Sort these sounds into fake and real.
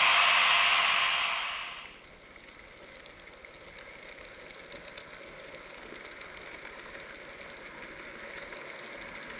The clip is real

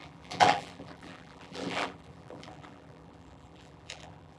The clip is fake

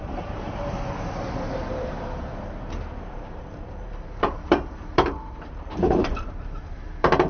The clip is fake